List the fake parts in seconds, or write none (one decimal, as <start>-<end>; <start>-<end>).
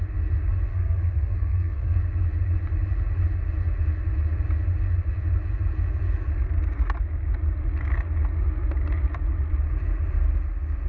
0.7-2.0